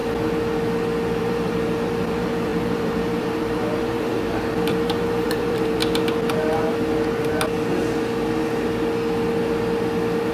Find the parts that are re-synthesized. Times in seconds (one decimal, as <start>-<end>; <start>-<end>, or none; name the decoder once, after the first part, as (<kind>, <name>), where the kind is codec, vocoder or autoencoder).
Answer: 1.2-5.8 (vocoder, BigVGAN v2)